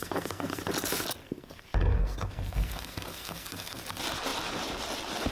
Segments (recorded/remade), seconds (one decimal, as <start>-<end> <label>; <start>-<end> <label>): 0.0-0.6 remade; 0.6-1.2 recorded; 1.2-3.8 remade; 3.8-5.3 recorded